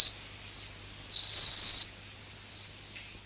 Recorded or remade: recorded